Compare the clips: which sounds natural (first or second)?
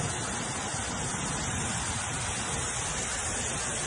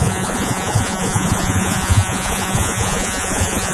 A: first